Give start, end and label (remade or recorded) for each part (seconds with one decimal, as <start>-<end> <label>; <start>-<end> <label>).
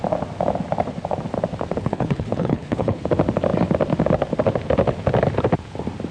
0.0-1.8 recorded; 1.8-3.0 remade; 3.0-6.1 recorded